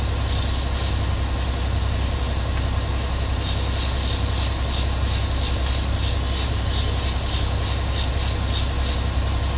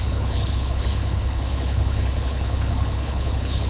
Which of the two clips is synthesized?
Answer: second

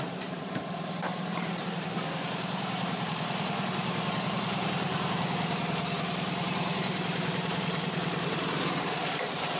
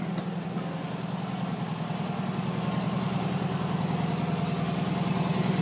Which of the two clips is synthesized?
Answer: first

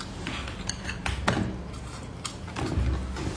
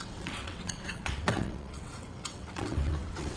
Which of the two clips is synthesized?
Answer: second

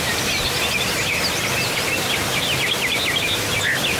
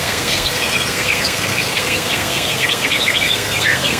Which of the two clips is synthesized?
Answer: second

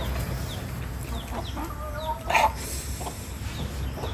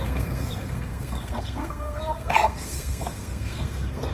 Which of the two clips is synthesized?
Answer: second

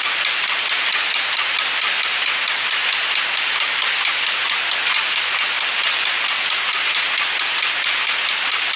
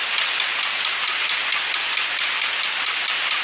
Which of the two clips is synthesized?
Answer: second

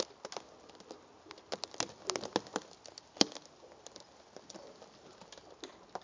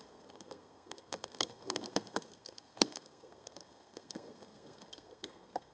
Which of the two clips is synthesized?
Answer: second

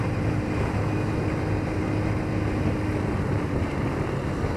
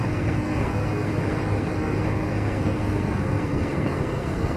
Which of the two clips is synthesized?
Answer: second